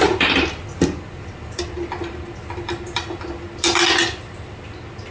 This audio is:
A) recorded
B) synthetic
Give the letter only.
A